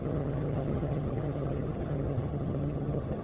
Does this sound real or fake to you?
fake